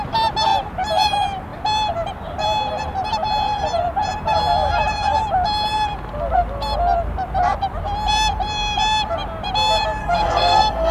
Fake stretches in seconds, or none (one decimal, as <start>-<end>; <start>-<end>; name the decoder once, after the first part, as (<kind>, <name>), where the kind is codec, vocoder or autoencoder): 10.0-10.9 (codec, SNAC)